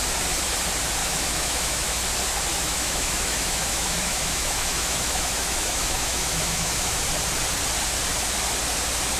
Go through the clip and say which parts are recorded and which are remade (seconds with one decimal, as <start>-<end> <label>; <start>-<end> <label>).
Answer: 0.0-1.0 recorded; 1.0-2.0 remade; 2.0-2.5 recorded; 2.5-7.0 remade; 7.0-9.2 recorded